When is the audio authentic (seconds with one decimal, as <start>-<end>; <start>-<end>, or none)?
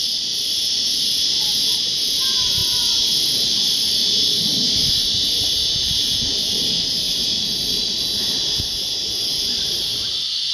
5.6-6.4